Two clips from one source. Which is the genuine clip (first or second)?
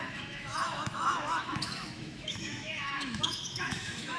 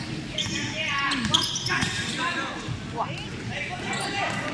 second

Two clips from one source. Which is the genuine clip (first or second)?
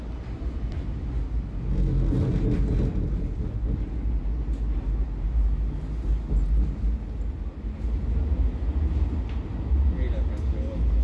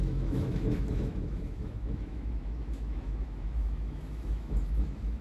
first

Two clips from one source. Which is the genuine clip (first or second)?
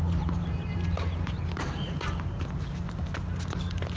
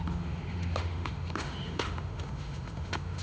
first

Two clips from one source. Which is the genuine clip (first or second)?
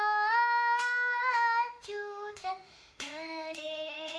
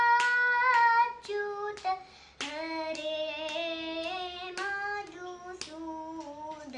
second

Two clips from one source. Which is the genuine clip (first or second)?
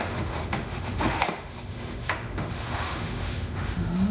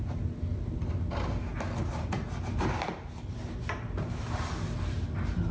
second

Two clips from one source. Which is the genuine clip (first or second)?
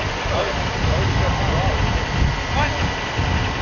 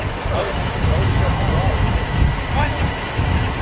first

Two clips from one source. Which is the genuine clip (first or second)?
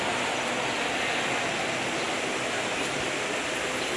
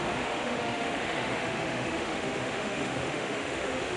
first